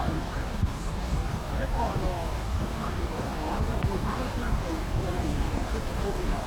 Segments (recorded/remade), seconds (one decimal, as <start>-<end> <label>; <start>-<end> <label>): 0.0-6.5 remade